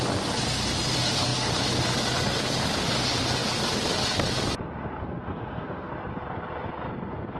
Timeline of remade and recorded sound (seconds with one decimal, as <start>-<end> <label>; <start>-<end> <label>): 0.0-5.0 recorded; 5.0-5.9 remade; 5.9-7.4 recorded